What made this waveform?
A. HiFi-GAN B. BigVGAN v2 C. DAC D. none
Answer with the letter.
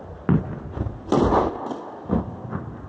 D